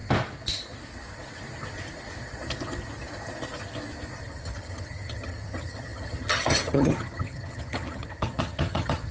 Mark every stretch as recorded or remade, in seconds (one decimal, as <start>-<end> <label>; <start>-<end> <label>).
0.0-4.2 recorded; 4.2-9.1 remade